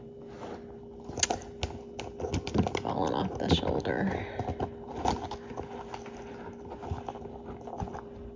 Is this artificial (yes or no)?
no